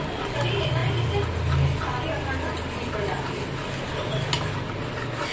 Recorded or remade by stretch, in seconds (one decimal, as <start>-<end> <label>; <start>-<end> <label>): 0.0-5.3 recorded